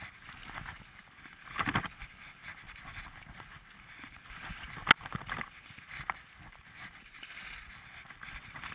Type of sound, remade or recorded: recorded